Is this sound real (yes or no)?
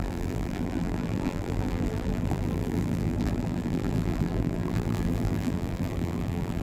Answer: no